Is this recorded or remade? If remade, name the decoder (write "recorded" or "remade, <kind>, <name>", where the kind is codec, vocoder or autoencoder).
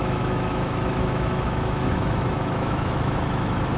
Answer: remade, autoencoder, DAC-VAE